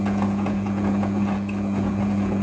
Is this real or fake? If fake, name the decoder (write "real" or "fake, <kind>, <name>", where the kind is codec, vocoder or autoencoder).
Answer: fake, vocoder, Vocos